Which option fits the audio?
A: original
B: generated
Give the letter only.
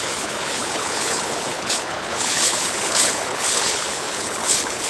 B